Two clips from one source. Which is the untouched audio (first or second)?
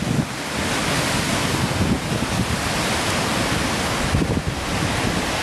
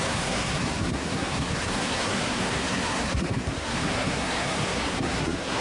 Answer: first